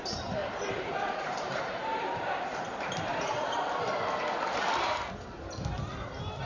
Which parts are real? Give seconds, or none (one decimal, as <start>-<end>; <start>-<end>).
0.0-0.4; 3.8-6.5